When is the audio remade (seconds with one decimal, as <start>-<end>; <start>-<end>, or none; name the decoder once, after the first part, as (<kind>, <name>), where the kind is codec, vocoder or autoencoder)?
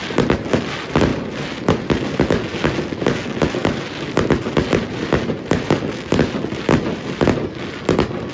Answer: none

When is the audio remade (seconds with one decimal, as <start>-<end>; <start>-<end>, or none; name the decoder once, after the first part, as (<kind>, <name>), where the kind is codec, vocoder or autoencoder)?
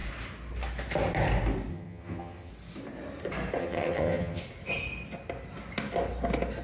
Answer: 1.7-2.5 (vocoder, HiFi-GAN); 3.6-4.4